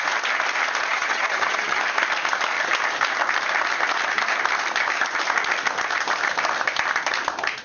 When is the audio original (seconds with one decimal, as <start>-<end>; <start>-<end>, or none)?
0.0-0.9; 1.8-7.6